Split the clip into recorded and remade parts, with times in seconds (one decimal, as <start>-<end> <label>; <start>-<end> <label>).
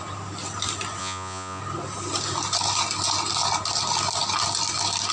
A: 0.0-1.0 recorded; 1.0-1.6 remade; 1.6-5.1 recorded